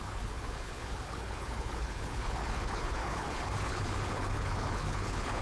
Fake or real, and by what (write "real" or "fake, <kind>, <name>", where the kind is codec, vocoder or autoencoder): fake, codec, HILCodec